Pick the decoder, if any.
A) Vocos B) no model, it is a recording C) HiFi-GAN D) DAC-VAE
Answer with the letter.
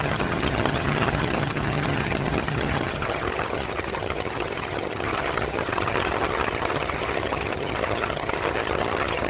C